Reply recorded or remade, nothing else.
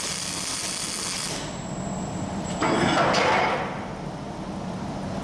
recorded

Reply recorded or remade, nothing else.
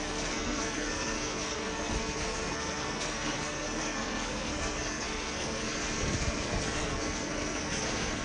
remade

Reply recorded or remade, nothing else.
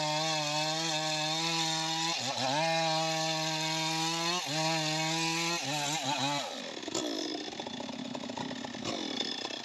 recorded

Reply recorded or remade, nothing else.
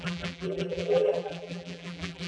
remade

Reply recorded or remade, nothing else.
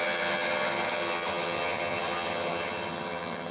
remade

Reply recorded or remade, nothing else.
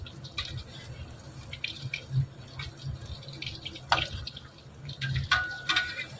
recorded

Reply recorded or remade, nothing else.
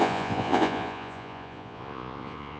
remade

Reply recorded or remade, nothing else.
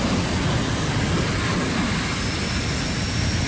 recorded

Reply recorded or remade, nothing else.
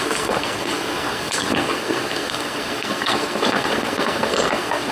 remade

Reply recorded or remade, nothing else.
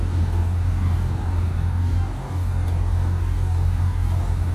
remade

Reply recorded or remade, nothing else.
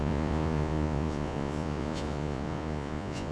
remade